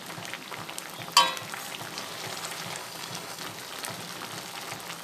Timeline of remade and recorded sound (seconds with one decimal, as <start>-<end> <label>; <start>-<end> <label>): 0.0-2.8 recorded; 2.8-3.4 remade; 3.4-5.0 recorded